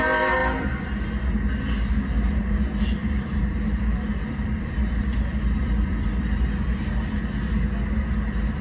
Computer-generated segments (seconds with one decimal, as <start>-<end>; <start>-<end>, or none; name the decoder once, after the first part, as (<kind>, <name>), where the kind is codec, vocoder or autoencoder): 3.0-6.2 (vocoder, BigVGAN v2)